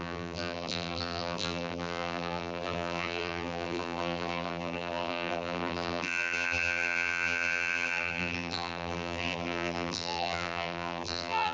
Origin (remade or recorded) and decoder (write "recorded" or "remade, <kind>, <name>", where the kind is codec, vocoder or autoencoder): remade, vocoder, BigVGAN v2